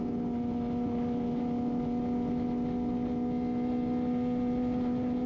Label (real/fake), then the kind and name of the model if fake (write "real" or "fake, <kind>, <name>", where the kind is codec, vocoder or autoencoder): real